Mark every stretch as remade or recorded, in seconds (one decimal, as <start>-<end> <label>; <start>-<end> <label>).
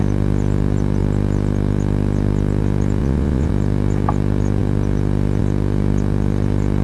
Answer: 0.0-3.0 recorded; 3.0-3.5 remade; 3.5-6.8 recorded